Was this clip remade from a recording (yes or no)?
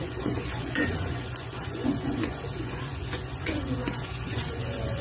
yes